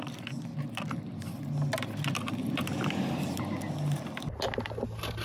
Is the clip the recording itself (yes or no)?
yes